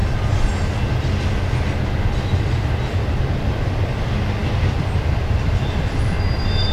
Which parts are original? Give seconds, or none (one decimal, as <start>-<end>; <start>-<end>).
0.0-4.4; 5.6-6.7